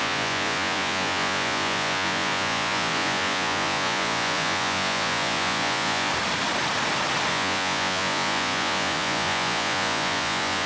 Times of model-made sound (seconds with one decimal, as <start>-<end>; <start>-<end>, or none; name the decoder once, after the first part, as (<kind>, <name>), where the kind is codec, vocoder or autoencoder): 0.0-6.1 (vocoder, Vocos); 7.3-10.7